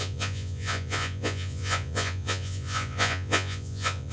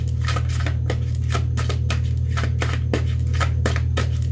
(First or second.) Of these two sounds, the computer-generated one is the first